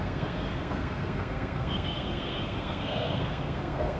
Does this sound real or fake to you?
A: fake